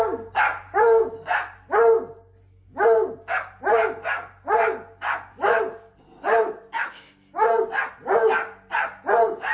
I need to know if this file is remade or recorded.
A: recorded